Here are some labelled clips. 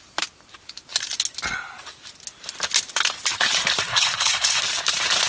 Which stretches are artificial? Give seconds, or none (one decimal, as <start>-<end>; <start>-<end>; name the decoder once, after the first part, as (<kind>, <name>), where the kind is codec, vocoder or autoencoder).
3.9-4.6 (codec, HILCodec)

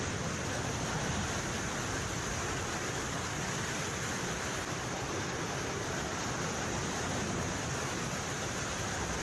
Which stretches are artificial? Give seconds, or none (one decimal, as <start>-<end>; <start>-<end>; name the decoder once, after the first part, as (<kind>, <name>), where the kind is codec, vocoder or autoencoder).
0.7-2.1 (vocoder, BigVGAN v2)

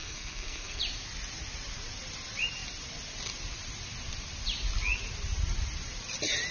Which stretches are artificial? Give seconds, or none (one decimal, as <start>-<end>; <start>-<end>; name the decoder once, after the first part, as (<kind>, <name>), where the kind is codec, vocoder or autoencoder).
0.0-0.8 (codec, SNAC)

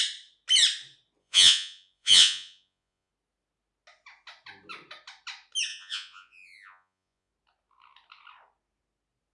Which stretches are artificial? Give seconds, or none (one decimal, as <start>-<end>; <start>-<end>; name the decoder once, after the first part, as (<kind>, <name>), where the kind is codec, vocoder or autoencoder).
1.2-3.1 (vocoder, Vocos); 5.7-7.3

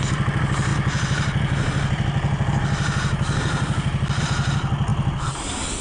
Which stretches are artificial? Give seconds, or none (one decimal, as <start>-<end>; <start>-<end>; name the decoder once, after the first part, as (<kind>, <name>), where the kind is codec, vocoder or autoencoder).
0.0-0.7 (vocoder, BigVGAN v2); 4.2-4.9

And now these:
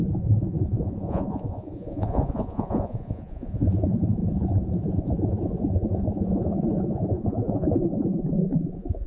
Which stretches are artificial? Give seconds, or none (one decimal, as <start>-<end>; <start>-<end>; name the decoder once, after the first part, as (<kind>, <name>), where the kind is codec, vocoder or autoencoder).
0.0-9.1 (vocoder, Vocos)

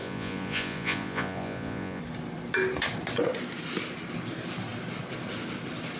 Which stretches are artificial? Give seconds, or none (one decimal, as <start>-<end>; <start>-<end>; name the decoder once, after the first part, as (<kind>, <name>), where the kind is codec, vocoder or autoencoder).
0.0-2.0 (vocoder, Vocos)